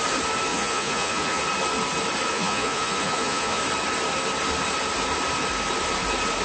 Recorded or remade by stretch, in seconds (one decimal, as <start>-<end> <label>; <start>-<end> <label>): 0.0-0.5 recorded; 0.5-1.4 remade; 1.4-2.3 recorded; 2.3-3.6 remade; 3.6-6.4 recorded